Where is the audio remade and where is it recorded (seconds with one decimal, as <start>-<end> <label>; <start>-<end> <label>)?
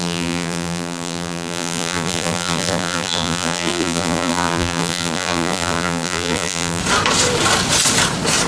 0.0-6.8 remade; 6.8-8.5 recorded